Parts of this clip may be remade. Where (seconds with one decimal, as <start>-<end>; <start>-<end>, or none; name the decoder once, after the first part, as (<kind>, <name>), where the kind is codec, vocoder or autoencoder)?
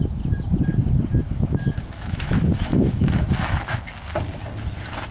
1.2-3.8 (autoencoder, DAC-VAE)